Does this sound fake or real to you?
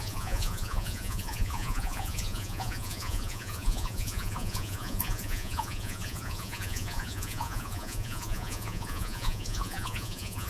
fake